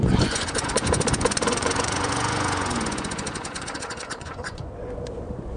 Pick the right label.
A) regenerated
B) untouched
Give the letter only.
A